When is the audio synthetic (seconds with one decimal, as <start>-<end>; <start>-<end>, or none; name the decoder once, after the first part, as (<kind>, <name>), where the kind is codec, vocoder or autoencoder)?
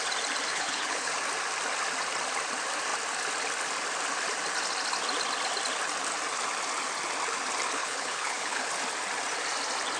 0.5-1.1 (codec, HILCodec); 7.8-8.7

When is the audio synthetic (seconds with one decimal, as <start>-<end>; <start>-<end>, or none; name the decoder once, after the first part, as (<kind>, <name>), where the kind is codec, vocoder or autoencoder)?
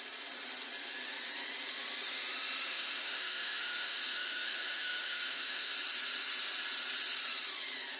2.7-5.7 (autoencoder, DAC-VAE)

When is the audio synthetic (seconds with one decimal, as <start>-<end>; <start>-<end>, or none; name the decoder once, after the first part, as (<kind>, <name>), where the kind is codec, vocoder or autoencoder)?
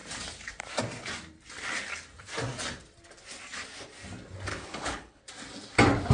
4.5-5.2 (codec, HILCodec)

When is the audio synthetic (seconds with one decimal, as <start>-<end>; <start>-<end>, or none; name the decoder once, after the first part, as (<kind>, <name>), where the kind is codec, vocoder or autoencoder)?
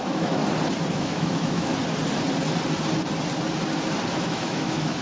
0.0-0.4 (autoencoder, DAC-VAE); 0.9-1.7; 4.1-5.0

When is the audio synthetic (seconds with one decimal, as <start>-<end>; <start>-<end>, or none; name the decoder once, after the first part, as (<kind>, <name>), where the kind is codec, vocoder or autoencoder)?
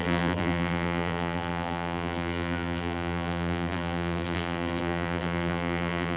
0.0-6.2 (vocoder, BigVGAN v2)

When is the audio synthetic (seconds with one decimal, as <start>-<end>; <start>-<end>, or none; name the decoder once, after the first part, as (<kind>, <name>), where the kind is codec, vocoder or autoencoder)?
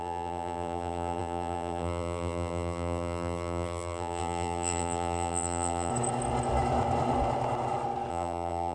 0.0-5.9 (vocoder, BigVGAN v2); 8.1-8.7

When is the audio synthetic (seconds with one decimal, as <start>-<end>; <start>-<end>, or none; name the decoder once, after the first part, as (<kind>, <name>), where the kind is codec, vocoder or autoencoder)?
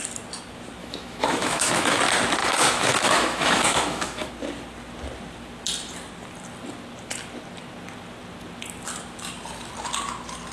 0.8-2.0 (autoencoder, DAC-VAE); 2.4-4.3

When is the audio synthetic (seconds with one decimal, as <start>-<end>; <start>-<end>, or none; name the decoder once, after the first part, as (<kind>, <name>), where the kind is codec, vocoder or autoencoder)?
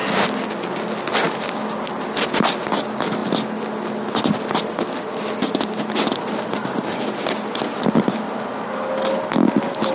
none